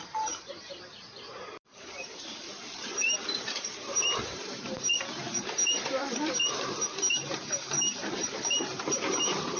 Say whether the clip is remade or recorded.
remade